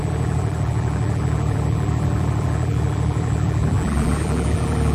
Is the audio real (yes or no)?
no